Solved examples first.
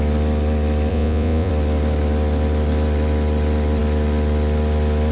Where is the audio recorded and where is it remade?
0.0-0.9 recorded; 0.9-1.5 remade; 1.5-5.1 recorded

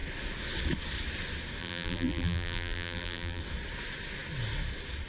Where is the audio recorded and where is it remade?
0.0-1.6 recorded; 1.6-3.4 remade; 3.4-5.1 recorded

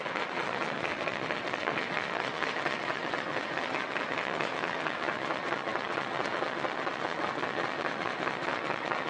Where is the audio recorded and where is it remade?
0.0-9.1 remade

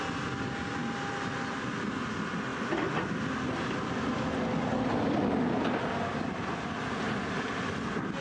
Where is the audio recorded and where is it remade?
0.0-8.2 recorded

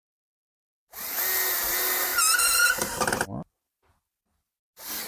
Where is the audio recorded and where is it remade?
0.0-2.1 recorded; 2.1-3.8 remade; 3.8-5.1 recorded

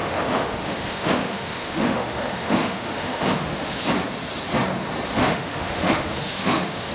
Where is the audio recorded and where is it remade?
0.0-3.8 remade; 3.8-5.2 recorded; 5.2-6.9 remade

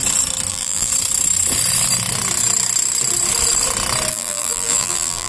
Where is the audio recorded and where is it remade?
0.0-0.5 recorded; 0.5-0.9 remade; 0.9-4.1 recorded; 4.1-5.3 remade